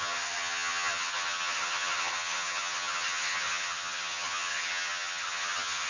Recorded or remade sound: remade